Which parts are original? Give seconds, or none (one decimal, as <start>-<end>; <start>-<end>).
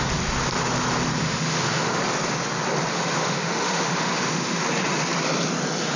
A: 0.0-1.2; 2.0-2.9; 4.6-6.0